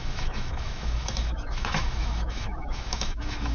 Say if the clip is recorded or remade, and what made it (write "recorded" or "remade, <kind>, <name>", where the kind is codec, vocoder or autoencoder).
remade, autoencoder, DAC-VAE